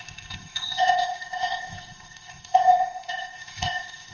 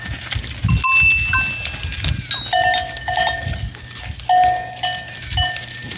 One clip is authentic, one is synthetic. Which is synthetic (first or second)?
first